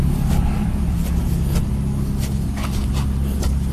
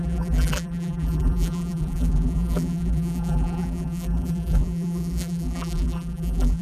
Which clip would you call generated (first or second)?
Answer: second